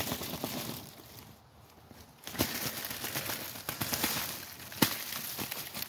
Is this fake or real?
real